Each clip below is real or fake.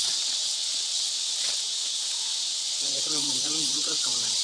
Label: fake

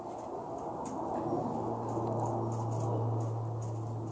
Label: real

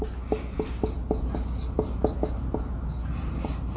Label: real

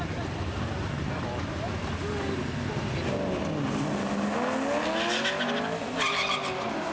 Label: real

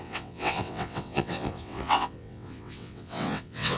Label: fake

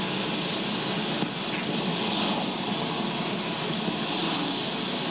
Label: real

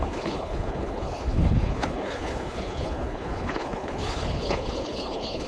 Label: fake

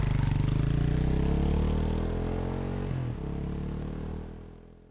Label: real